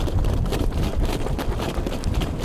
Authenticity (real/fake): fake